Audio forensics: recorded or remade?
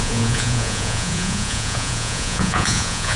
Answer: remade